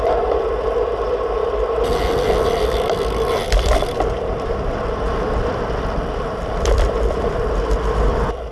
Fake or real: fake